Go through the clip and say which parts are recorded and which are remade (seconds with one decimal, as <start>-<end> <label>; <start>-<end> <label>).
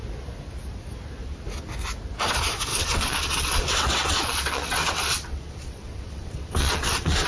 0.0-2.7 recorded; 2.7-7.3 remade